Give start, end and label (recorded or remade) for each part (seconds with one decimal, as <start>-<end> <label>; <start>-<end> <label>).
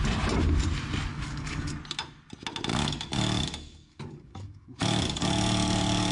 0.0-1.1 recorded; 1.1-1.8 remade; 1.8-2.7 recorded; 2.7-6.1 remade